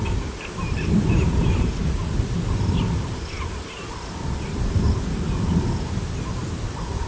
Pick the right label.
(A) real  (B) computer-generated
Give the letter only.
A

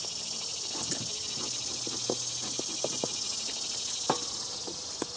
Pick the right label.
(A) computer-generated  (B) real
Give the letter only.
B